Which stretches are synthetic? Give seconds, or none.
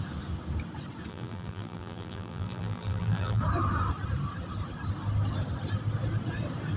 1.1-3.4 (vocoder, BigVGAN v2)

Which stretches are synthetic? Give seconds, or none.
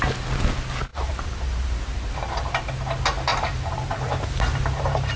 0.9-2.5 (vocoder, BigVGAN v2); 3.3-5.2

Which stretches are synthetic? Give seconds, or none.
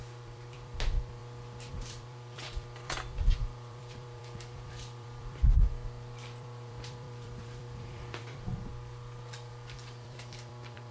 0.0-1.2 (vocoder, BigVGAN v2); 1.7-8.7; 9.5-10.9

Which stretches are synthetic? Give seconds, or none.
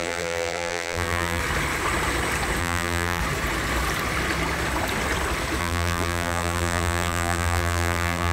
0.0-1.4 (vocoder, BigVGAN v2); 2.6-3.2; 5.6-8.3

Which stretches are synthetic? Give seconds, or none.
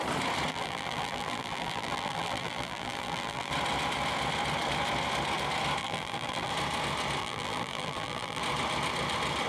0.5-3.5 (vocoder, BigVGAN v2); 5.8-6.5; 7.2-8.4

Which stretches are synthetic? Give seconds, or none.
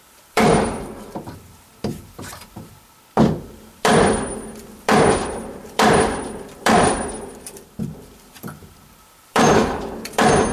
0.0-10.5 (vocoder, BigVGAN v2)